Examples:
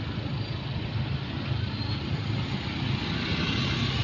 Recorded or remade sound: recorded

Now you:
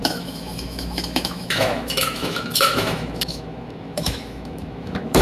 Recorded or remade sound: remade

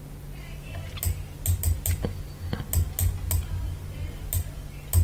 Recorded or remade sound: recorded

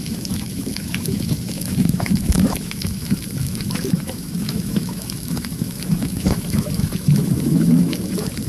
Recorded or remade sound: remade